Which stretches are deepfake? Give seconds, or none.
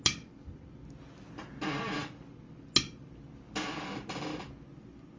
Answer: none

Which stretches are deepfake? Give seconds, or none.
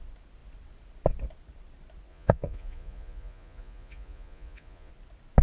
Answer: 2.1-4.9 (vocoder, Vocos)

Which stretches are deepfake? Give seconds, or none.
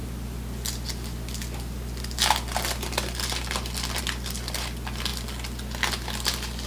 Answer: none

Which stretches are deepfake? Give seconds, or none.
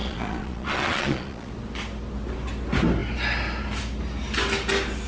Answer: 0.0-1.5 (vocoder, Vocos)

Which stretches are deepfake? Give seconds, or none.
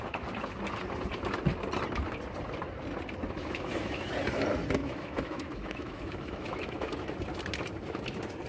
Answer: 3.4-4.1 (autoencoder, DAC-VAE); 4.8-6.9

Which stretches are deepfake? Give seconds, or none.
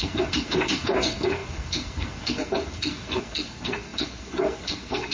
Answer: 0.0-5.1 (codec, SNAC)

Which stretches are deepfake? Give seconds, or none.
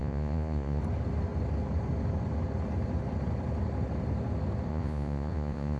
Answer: 0.0-0.8 (vocoder, Vocos); 4.7-5.8